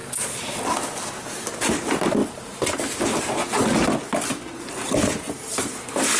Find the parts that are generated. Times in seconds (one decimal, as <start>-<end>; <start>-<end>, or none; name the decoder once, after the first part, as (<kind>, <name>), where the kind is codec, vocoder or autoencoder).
none